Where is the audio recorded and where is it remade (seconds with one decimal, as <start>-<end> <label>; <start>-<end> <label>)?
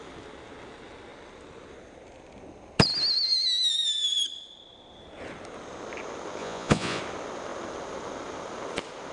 0.0-6.4 recorded; 6.4-7.0 remade; 7.0-9.1 recorded